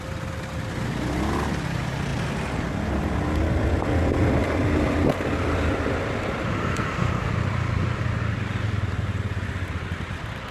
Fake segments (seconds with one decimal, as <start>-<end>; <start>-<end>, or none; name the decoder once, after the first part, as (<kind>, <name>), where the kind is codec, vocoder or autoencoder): 6.6-7.3 (codec, SNAC)